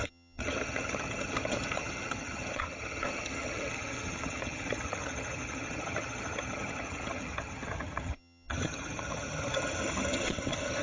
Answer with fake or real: fake